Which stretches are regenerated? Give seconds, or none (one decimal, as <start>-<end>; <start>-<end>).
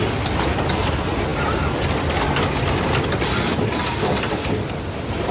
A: none